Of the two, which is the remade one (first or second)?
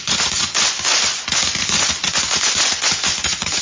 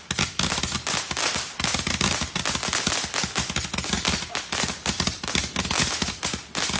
first